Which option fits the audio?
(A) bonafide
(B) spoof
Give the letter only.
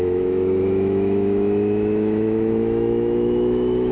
B